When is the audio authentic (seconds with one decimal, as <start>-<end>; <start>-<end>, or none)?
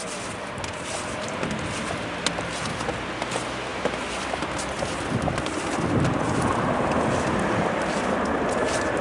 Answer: 0.0-9.0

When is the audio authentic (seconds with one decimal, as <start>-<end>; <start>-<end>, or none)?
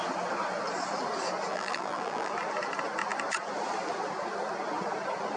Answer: 0.0-1.5; 2.3-5.4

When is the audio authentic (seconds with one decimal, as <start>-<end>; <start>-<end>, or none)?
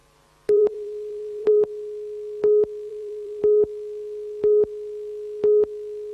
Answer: 1.5-2.9; 3.4-6.1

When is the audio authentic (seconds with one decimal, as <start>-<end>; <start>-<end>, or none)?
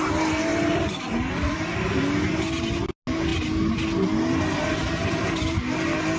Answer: 0.0-0.5; 2.0-6.2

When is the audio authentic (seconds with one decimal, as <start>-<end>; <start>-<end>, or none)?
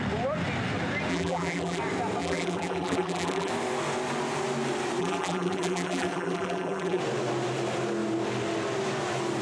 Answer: 0.0-1.1; 1.8-2.2; 3.5-5.0; 7.0-9.4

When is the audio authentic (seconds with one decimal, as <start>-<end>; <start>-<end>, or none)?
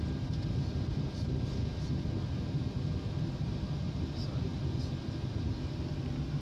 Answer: 0.0-6.4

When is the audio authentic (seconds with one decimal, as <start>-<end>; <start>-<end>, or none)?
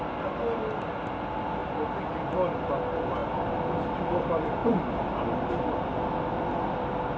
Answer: 0.0-3.2; 4.0-4.6; 5.5-7.2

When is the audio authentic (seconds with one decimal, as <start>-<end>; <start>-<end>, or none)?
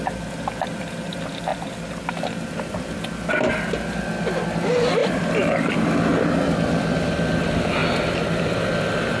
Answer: 0.0-5.0; 5.7-9.2